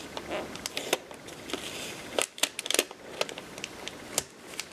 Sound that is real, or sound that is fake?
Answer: real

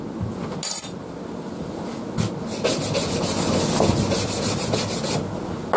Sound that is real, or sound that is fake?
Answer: real